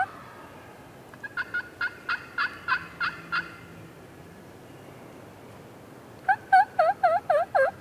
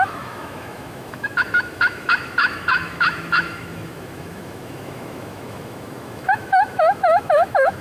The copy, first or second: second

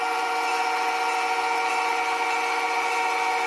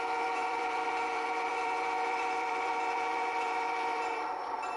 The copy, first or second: second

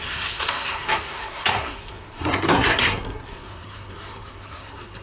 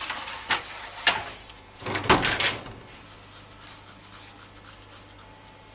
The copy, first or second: first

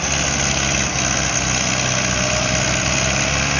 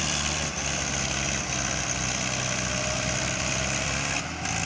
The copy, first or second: second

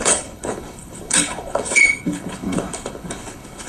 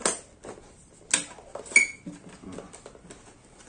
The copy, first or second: first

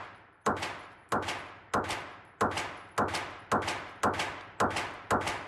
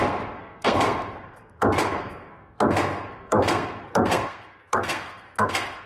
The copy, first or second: second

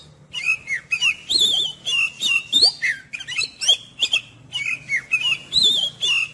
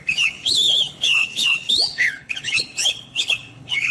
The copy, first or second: second